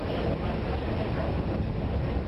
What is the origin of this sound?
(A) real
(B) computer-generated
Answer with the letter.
A